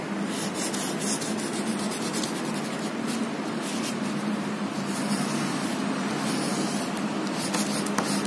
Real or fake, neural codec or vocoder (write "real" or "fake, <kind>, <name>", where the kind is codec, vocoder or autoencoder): real